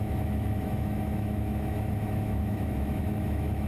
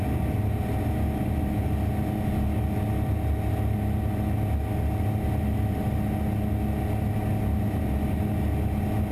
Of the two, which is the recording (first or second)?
second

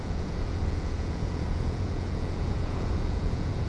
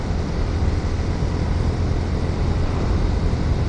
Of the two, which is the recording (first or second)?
second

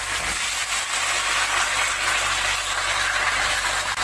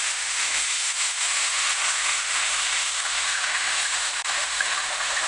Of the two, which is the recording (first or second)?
first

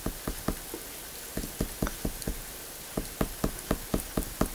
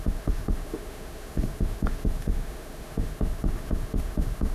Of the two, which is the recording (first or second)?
first